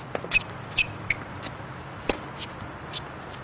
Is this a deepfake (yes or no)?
yes